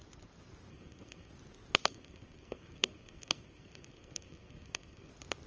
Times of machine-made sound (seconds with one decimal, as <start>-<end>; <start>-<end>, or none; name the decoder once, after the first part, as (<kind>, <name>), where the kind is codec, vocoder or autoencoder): 0.7-1.3 (codec, SNAC); 1.8-5.1